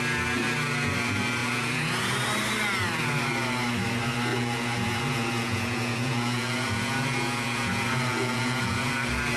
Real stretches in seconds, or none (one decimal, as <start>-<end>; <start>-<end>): 0.0-1.4; 2.0-4.3; 8.9-9.4

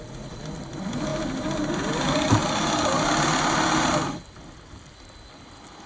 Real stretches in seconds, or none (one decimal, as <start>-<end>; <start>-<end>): 0.0-5.9

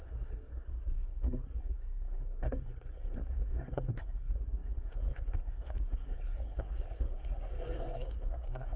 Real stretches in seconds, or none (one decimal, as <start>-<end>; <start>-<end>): none

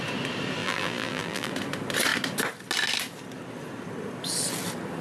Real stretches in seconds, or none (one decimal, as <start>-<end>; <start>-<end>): 0.0-0.6; 1.5-5.0

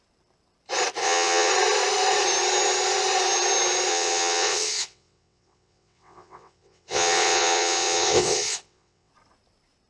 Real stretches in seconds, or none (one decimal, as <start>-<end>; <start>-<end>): 0.0-1.0; 1.5-3.9; 9.1-9.9

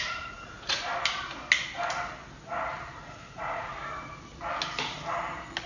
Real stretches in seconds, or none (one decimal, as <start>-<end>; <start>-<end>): 0.9-2.9; 3.7-5.7

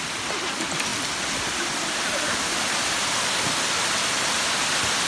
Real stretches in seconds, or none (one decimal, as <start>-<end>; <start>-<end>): 0.0-5.1

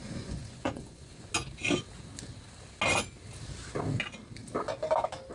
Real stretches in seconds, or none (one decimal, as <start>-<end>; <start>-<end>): 1.3-5.3